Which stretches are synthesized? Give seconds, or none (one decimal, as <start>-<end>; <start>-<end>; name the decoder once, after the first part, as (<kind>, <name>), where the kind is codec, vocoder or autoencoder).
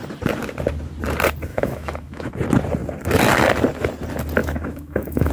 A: 1.5-2.3 (autoencoder, DAC-VAE); 4.4-5.3